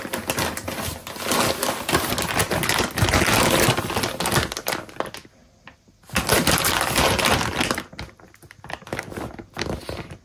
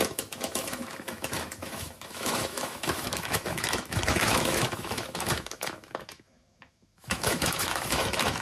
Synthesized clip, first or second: second